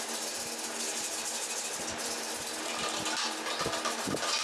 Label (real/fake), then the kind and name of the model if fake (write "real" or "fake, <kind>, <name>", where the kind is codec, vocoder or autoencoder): real